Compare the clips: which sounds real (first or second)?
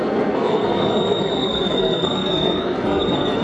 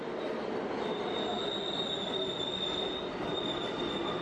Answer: second